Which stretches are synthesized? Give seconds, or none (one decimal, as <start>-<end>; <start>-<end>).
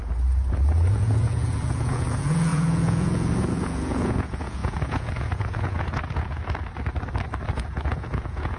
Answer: 0.9-6.4; 7.5-8.6